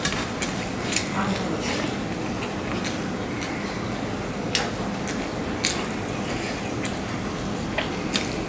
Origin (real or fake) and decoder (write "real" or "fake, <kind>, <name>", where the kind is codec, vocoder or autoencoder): real